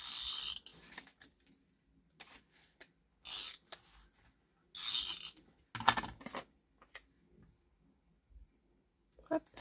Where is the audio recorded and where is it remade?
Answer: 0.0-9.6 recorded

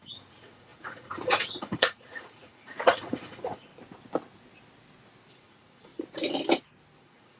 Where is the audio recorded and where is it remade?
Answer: 0.0-3.7 remade; 3.7-5.3 recorded; 5.3-5.9 remade; 5.9-7.0 recorded; 7.0-7.4 remade

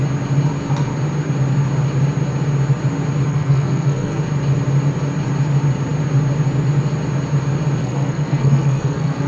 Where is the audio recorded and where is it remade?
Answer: 0.0-3.3 recorded; 3.3-4.2 remade; 4.2-7.8 recorded; 7.8-9.3 remade

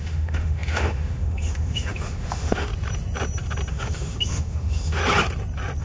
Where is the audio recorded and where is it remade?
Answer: 0.0-2.7 remade; 2.7-3.7 recorded; 3.7-5.0 remade; 5.0-5.8 recorded

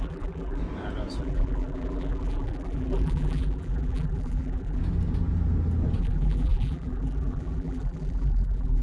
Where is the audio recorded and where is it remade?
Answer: 0.0-0.6 remade; 0.6-1.2 recorded; 1.2-4.8 remade; 4.8-6.0 recorded; 6.0-8.8 remade

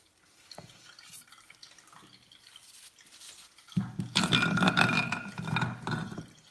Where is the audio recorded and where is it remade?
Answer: 0.0-6.5 recorded

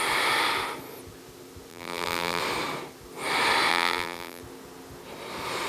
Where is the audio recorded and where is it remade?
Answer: 0.0-1.7 recorded; 1.7-2.4 remade; 2.4-3.7 recorded; 3.7-4.4 remade; 4.4-5.7 recorded

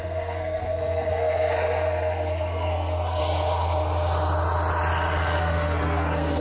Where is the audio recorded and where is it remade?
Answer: 0.0-3.2 remade; 3.2-5.4 recorded; 5.4-6.4 remade